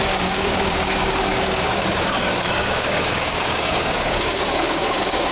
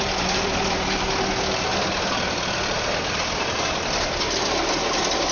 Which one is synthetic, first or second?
first